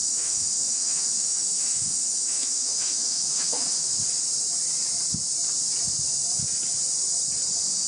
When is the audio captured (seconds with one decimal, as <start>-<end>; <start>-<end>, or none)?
3.9-7.9